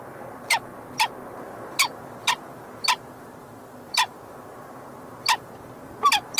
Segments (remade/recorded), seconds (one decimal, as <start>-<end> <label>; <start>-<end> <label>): 0.0-6.4 recorded